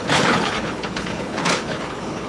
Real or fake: fake